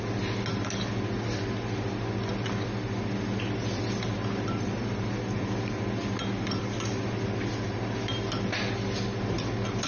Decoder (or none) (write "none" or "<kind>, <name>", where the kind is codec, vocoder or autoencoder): none